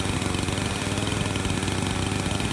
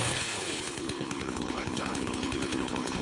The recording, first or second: first